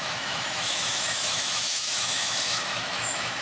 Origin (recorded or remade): remade